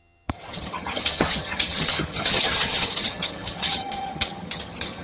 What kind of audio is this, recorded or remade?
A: remade